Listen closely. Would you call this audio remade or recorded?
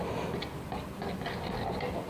recorded